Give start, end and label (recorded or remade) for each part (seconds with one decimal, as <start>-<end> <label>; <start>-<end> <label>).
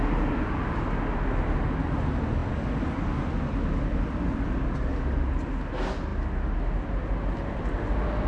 0.0-8.3 recorded